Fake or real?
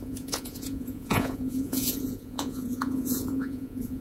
fake